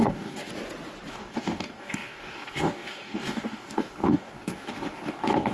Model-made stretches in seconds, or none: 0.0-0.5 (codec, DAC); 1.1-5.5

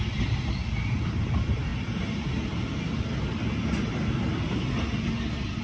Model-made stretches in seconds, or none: none

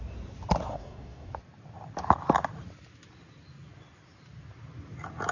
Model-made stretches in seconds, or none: 0.7-1.3 (codec, DAC)

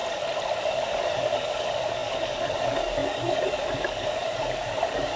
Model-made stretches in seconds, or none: 0.6-5.2 (codec, DAC)

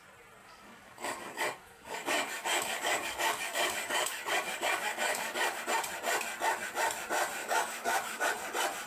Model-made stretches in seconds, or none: 0.4-5.6 (codec, DAC); 7.4-8.3

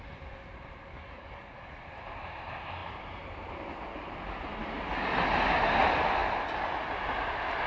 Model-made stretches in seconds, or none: 0.9-1.8 (codec, DAC)

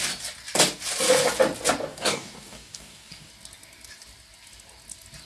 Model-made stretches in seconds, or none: 1.9-3.3 (codec, DAC)